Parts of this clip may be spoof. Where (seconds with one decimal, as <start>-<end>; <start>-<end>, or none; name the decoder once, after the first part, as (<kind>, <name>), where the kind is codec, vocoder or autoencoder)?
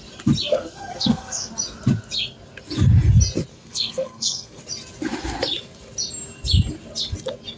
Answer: 0.5-1.5 (codec, SNAC); 3.5-4.6